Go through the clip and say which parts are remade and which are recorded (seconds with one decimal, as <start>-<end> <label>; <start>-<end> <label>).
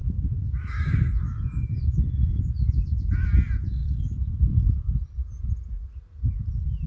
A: 0.0-2.4 remade; 2.4-3.8 recorded; 3.8-4.7 remade; 4.7-6.9 recorded